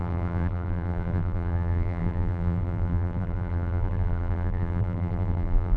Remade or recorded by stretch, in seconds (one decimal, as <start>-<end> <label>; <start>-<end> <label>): 0.0-5.8 remade